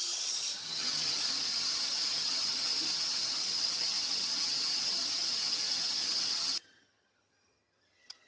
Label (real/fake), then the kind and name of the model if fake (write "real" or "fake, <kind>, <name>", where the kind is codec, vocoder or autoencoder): fake, vocoder, HiFi-GAN